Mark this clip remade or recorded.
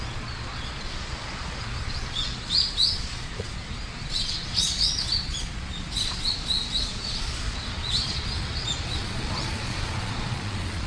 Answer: remade